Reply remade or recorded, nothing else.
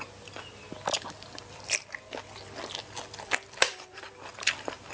recorded